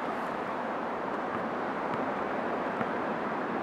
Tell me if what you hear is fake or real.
fake